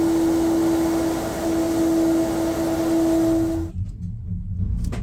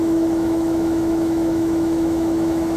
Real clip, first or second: first